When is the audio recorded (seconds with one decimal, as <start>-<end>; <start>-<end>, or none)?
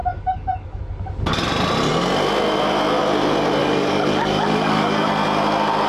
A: 0.8-3.6; 5.1-5.9